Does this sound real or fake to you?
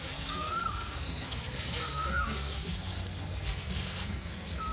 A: fake